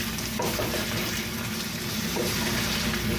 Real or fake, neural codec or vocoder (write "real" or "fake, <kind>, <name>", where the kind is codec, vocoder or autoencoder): real